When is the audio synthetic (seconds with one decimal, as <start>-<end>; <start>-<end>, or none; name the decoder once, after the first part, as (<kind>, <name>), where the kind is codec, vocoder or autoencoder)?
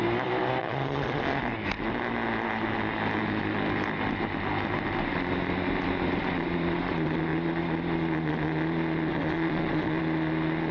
0.6-1.2 (vocoder, Vocos); 9.1-10.0